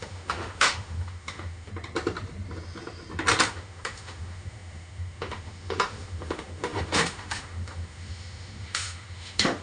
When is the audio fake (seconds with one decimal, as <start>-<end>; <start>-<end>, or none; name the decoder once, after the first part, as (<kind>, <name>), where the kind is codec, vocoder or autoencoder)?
0.0-1.7 (autoencoder, DAC-VAE); 3.5-9.6